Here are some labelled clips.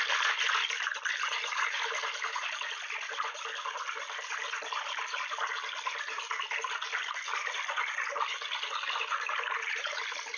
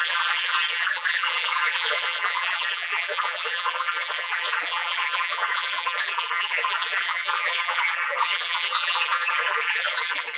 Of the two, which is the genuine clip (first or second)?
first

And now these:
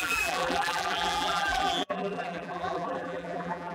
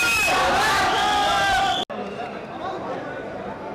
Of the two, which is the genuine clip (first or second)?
second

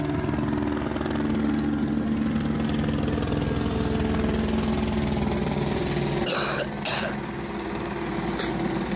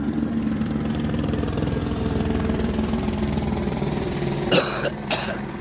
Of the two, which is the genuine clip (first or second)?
first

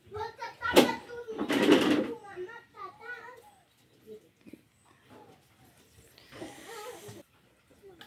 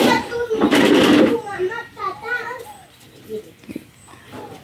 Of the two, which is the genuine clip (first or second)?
first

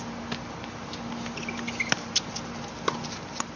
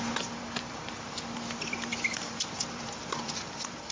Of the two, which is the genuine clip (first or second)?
first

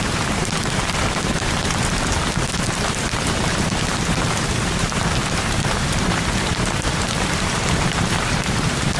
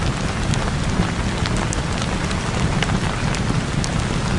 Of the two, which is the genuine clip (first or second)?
second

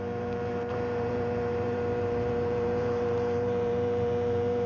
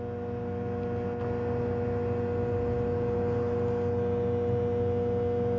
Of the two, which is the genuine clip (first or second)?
second